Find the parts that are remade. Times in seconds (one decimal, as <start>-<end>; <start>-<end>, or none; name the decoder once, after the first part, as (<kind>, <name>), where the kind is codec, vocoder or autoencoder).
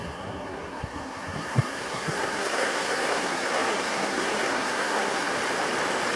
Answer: 0.0-5.3 (codec, SNAC)